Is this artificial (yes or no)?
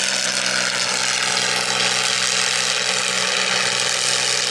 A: no